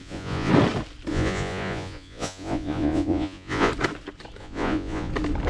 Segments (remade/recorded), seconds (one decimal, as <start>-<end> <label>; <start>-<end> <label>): 0.0-0.5 remade; 0.5-1.1 recorded; 1.1-3.7 remade; 3.7-4.4 recorded; 4.4-5.1 remade; 5.1-5.5 recorded